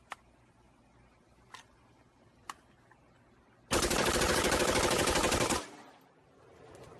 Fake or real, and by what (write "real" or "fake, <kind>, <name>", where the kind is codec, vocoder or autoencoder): real